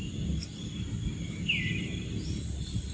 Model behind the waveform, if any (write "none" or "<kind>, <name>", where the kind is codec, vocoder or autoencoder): none